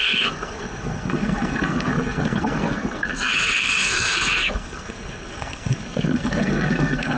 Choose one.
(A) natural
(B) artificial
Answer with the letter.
B